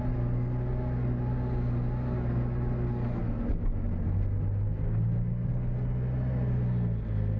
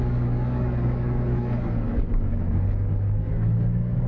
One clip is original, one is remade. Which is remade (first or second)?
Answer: second